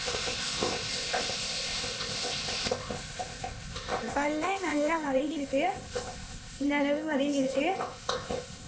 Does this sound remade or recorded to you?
remade